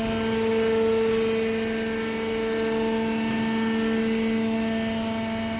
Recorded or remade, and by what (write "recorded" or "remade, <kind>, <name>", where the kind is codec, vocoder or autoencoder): recorded